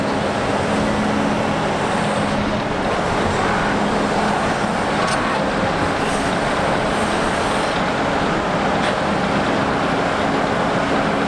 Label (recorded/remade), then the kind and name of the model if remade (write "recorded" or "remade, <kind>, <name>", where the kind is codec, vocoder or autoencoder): recorded